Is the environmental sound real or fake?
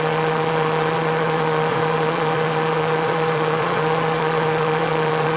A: fake